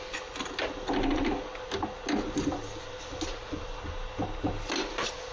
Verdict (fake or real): real